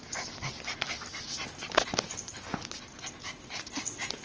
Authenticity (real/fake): real